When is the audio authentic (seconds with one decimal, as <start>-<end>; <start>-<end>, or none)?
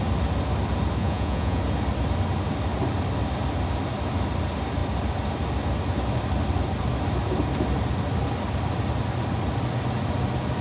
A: 0.0-1.0; 1.6-10.6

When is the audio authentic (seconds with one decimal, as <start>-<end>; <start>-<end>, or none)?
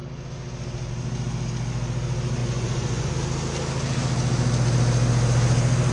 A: 0.0-2.4; 3.1-5.9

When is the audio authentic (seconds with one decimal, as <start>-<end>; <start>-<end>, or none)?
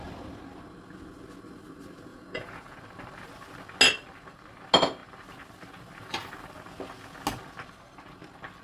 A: 0.0-2.1; 2.8-8.6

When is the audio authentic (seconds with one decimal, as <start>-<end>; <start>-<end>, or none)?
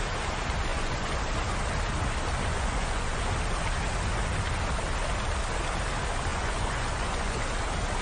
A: 0.0-0.7; 1.3-2.5; 3.3-6.3; 7.4-8.0